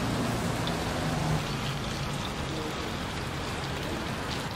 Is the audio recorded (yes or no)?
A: yes